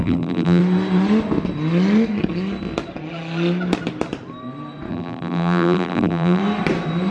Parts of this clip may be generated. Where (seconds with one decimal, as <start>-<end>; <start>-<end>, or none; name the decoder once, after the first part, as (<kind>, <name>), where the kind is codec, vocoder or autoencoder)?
0.0-0.6 (vocoder, BigVGAN v2); 4.9-6.4